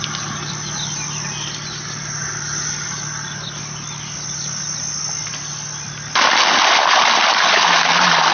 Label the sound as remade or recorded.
recorded